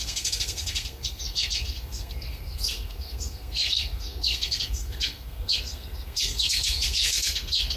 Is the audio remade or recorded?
remade